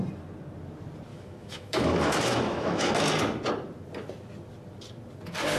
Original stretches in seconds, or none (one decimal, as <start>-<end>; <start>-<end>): 0.0-1.1; 2.9-5.6